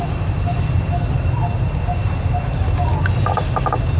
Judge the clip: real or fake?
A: real